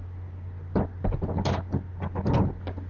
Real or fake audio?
real